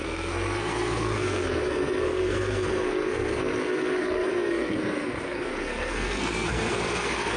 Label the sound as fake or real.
fake